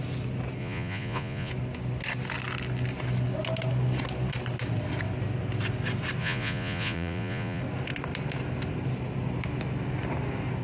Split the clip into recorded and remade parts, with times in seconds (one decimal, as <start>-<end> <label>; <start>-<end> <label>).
0.0-0.6 recorded; 0.6-1.5 remade; 1.5-6.2 recorded; 6.2-7.6 remade; 7.6-10.6 recorded